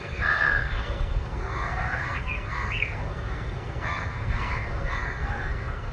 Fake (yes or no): yes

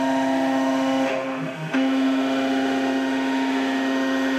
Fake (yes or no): yes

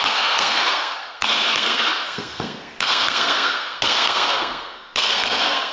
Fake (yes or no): yes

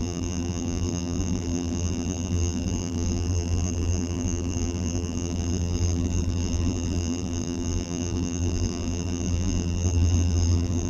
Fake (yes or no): yes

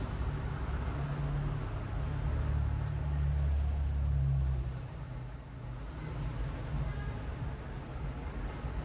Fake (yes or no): no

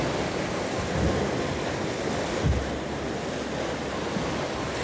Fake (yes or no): no